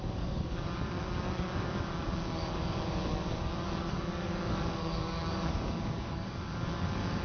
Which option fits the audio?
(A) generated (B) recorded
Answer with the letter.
A